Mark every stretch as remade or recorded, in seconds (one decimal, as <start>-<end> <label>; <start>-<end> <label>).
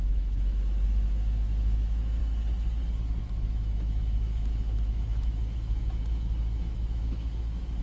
0.0-2.2 remade; 2.2-3.2 recorded; 3.2-7.8 remade